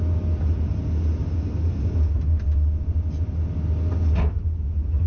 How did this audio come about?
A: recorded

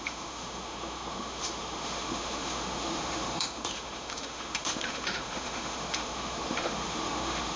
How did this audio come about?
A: remade